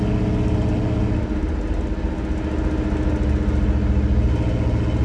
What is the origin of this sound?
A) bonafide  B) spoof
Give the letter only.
A